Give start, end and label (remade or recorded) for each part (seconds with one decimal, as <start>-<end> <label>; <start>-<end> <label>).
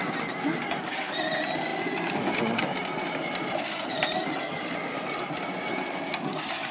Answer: 0.0-6.7 recorded